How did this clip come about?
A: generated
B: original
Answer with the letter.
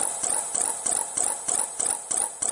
B